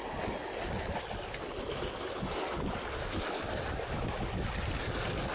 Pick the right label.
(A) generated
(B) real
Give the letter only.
B